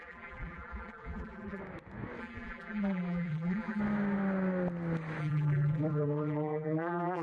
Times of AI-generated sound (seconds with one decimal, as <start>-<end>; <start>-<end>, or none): 0.0-1.6; 2.2-3.8; 5.2-7.2